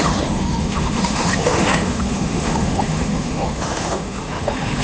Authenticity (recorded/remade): remade